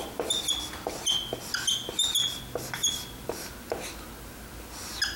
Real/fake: real